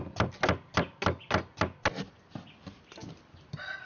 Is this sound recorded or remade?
recorded